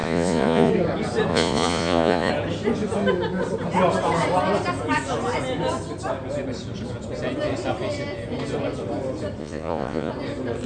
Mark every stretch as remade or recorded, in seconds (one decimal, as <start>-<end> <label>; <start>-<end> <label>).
0.0-0.7 remade; 0.7-1.3 recorded; 1.3-2.3 remade; 2.3-9.4 recorded; 9.4-10.1 remade; 10.1-10.7 recorded